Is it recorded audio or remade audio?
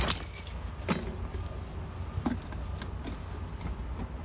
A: recorded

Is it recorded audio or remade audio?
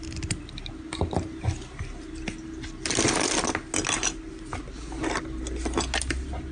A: recorded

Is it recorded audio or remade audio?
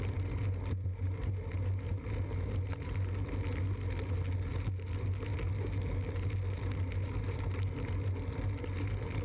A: recorded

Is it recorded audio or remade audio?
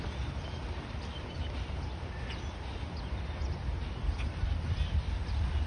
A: recorded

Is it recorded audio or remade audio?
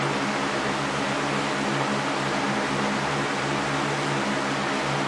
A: recorded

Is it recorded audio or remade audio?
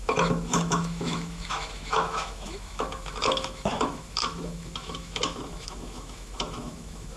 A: remade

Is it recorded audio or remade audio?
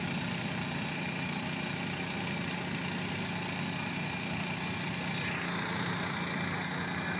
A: recorded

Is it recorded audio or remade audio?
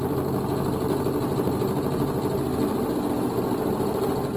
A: recorded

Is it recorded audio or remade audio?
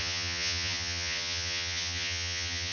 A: remade